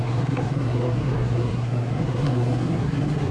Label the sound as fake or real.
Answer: fake